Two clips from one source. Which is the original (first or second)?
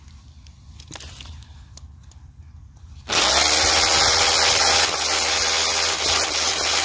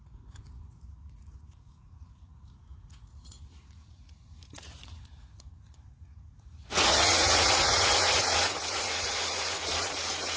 first